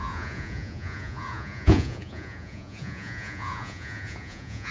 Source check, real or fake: fake